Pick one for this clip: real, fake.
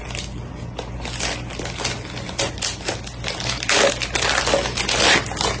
real